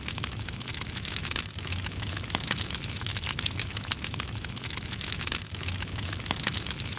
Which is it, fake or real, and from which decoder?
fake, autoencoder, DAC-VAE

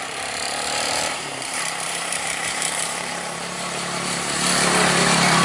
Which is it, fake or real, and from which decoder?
fake, vocoder, BigVGAN v2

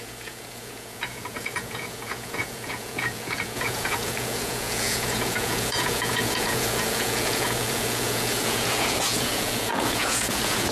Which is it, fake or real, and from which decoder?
fake, vocoder, Vocos